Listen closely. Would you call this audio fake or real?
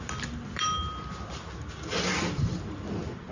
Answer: real